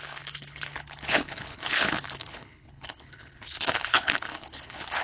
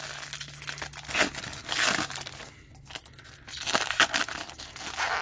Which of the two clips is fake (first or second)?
first